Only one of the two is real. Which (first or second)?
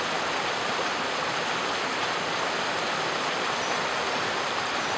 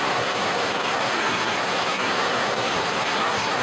first